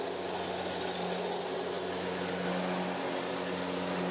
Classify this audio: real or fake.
real